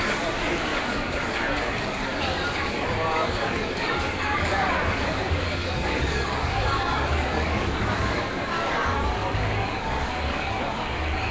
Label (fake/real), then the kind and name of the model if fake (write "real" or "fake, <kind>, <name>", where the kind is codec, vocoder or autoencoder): fake, codec, DAC